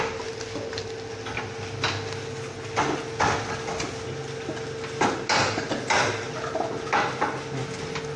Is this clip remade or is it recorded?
recorded